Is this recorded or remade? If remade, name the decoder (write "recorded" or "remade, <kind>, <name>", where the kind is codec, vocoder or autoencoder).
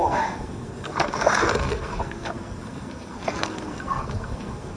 remade, codec, SNAC